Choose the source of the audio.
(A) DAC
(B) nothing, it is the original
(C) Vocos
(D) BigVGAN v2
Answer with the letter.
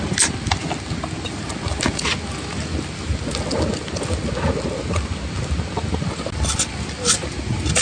B